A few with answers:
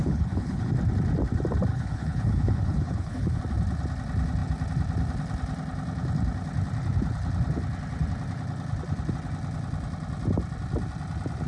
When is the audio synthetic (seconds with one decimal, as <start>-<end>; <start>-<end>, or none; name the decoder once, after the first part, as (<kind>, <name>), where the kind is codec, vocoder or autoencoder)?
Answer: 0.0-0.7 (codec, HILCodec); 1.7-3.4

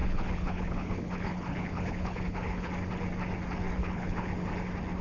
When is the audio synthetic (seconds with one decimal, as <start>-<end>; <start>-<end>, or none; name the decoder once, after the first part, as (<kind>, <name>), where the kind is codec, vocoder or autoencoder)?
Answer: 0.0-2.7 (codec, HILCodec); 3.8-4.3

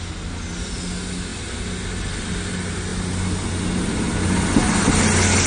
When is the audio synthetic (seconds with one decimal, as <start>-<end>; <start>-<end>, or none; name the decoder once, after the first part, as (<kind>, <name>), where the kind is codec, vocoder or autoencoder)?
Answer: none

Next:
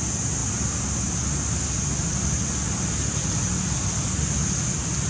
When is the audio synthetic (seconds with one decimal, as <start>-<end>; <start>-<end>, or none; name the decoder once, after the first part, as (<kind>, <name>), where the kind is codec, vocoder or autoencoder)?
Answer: none

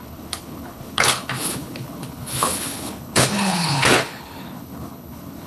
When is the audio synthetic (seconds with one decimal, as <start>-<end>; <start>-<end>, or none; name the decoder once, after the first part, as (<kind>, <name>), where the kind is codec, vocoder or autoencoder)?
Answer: 0.0-5.5 (codec, HILCodec)